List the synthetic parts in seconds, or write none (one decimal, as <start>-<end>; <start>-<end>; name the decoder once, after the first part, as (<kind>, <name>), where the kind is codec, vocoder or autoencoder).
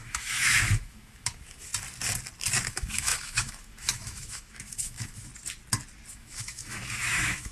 0.0-1.7 (autoencoder, DAC-VAE); 2.7-5.3; 6.1-7.5